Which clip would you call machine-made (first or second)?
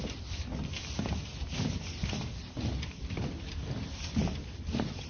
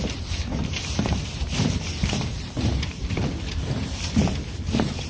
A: second